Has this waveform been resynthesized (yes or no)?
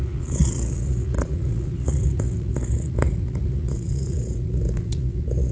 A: yes